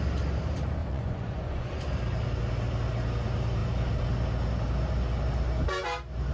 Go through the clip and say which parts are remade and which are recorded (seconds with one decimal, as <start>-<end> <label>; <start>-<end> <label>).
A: 0.0-0.8 recorded; 0.8-1.8 remade; 1.8-6.3 recorded